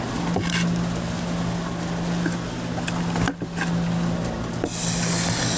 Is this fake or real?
real